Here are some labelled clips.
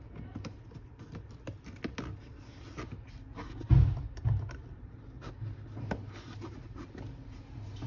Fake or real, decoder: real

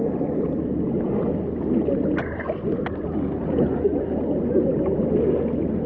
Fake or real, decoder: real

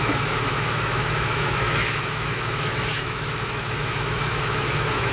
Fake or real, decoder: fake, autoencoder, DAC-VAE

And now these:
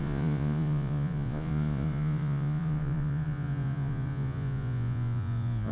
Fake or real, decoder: fake, vocoder, Vocos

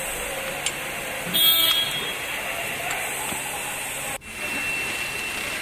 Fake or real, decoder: real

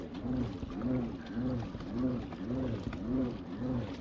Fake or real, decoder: real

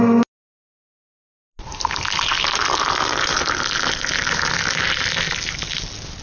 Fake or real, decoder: real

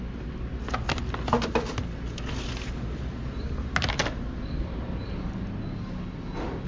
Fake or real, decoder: real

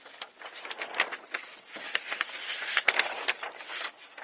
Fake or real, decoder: real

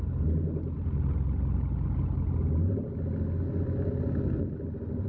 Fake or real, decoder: real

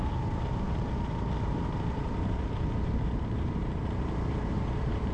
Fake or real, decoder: fake, vocoder, BigVGAN v2